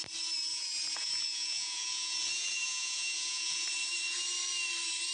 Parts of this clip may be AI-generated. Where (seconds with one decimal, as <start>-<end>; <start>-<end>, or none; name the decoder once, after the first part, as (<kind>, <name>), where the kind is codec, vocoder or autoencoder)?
0.5-3.6 (vocoder, Vocos)